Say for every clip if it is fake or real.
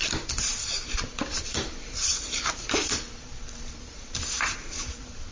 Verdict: fake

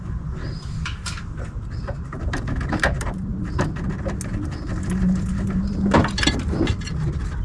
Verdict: real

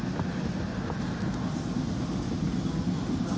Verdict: real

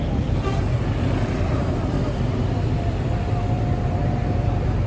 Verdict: fake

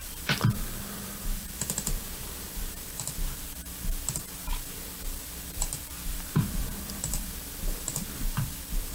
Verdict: fake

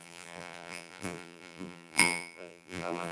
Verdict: fake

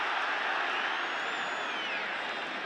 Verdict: real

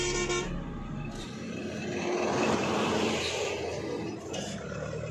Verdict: real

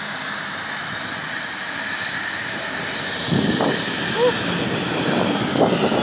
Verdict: real